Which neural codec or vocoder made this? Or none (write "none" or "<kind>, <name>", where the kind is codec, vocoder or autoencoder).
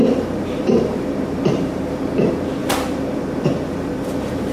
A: vocoder, BigVGAN v2